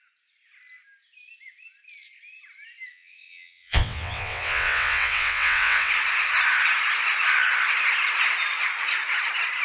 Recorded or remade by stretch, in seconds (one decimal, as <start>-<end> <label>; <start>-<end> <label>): 0.0-2.9 recorded; 2.9-5.9 remade; 5.9-9.6 recorded